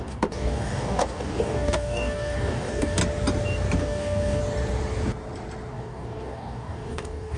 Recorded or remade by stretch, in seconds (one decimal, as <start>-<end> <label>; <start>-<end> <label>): 0.0-3.0 remade; 3.0-3.8 recorded; 3.8-4.4 remade; 4.4-5.7 recorded; 5.7-7.4 remade